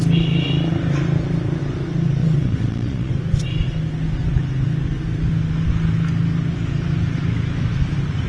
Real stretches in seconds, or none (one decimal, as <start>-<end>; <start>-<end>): 0.0-2.2; 3.1-8.3